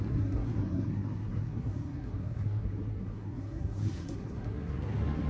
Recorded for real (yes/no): no